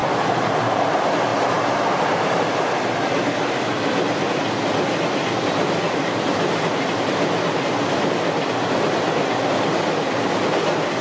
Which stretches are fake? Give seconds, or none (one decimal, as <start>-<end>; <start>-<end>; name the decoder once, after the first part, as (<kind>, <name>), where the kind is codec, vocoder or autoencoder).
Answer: 0.0-0.8 (vocoder, BigVGAN v2); 1.3-2.4